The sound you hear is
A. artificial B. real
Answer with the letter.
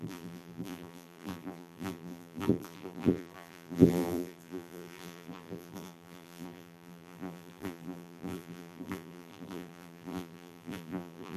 A